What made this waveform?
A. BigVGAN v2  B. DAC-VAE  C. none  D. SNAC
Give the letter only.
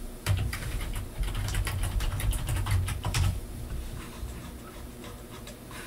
A